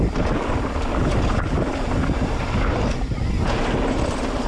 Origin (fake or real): real